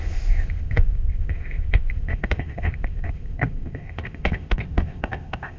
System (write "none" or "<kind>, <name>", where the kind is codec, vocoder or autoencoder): codec, ZipCodec